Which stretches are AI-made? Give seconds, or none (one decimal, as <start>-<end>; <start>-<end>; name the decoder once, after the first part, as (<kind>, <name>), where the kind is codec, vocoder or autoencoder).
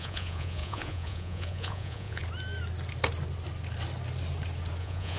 0.0-2.2 (vocoder, Vocos); 4.8-5.2